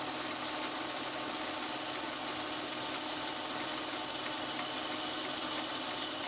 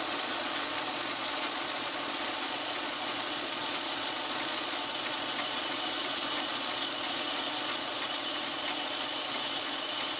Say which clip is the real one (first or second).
first